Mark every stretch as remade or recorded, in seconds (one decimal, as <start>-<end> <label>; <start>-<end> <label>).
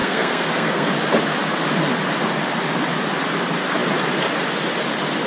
0.0-0.9 remade; 0.9-5.3 recorded